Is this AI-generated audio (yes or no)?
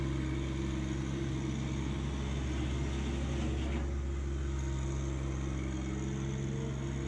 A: no